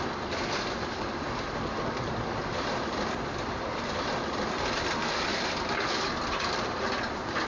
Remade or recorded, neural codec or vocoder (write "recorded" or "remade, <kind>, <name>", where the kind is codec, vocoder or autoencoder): remade, vocoder, BigVGAN v2